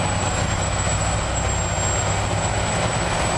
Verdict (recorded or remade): recorded